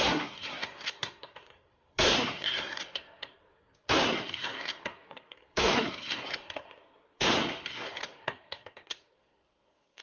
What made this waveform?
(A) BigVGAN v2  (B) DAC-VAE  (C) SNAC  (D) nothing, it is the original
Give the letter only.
C